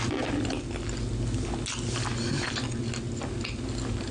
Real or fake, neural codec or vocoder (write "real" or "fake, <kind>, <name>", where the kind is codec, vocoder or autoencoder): real